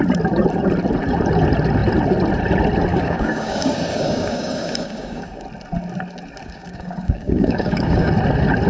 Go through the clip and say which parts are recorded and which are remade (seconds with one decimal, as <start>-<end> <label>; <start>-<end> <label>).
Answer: 0.0-2.9 recorded; 2.9-5.4 remade; 5.4-6.4 recorded; 6.4-8.1 remade; 8.1-8.7 recorded